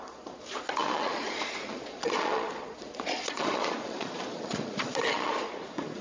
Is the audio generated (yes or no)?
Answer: yes